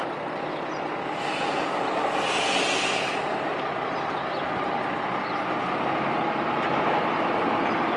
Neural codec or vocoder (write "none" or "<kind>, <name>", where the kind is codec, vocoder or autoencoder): none